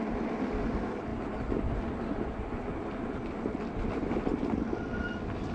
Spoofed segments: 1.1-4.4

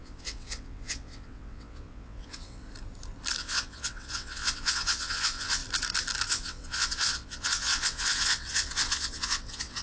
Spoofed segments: 0.0-2.6; 3.4-5.6; 6.3-9.8

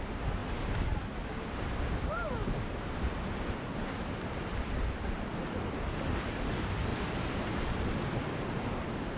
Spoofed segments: 0.4-2.3; 2.7-5.3; 6.9-8.4

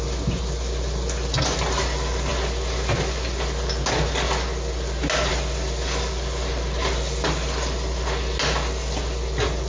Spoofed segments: none

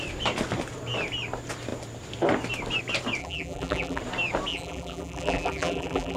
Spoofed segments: 3.2-4.0; 4.5-6.2

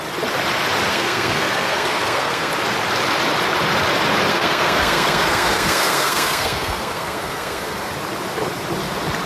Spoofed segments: 0.9-2.5; 4.3-7.9